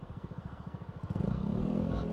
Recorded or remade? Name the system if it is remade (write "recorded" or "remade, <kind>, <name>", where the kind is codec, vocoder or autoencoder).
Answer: remade, codec, SNAC